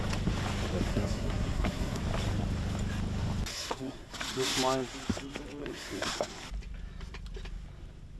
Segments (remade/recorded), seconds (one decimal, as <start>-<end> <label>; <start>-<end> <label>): 0.0-0.9 recorded; 0.9-2.0 remade; 2.0-3.5 recorded; 3.5-4.1 remade; 4.1-5.6 recorded; 5.6-6.1 remade; 6.1-8.2 recorded